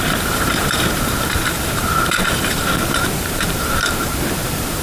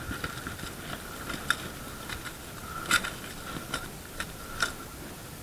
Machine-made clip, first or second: first